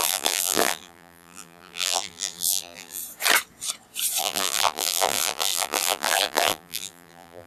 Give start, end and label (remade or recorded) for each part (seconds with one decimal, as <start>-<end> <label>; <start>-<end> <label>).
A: 0.0-3.0 remade; 3.0-4.2 recorded; 4.2-7.5 remade